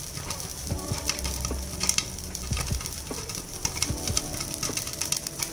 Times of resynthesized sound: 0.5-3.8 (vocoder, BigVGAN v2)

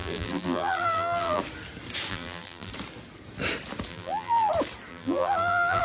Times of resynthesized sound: 0.0-1.4 (vocoder, BigVGAN v2); 2.1-2.7; 3.9-4.5; 4.9-5.8